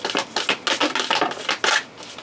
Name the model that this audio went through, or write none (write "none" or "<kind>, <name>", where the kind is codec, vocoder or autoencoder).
none